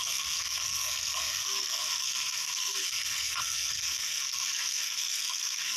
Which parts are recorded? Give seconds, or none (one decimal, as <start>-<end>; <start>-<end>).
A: none